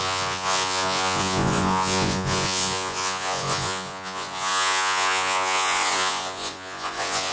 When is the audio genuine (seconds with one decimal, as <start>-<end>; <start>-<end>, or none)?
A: none